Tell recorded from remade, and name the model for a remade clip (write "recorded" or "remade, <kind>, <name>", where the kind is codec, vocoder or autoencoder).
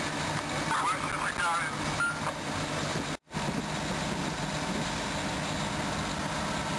recorded